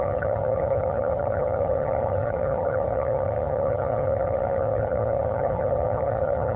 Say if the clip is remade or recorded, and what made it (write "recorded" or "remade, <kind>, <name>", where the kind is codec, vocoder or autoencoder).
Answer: remade, vocoder, HiFi-GAN